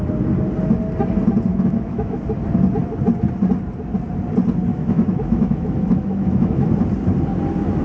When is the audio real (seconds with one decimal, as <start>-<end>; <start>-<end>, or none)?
0.0-1.5; 2.2-4.7; 6.7-7.8